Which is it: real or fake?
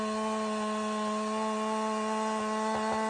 real